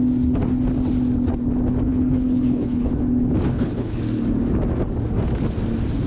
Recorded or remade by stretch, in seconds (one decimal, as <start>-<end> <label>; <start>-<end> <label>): 0.0-1.9 recorded; 1.9-2.9 remade; 2.9-3.5 recorded; 3.5-4.0 remade; 4.0-6.1 recorded